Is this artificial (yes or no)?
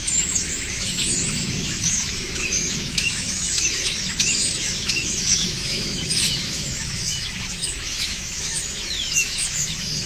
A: yes